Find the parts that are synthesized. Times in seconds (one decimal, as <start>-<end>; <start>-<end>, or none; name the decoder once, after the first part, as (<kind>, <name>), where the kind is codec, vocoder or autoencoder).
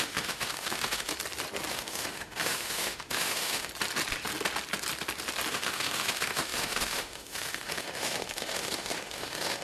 0.0-1.1 (autoencoder, DAC-VAE); 1.7-3.7; 5.5-9.6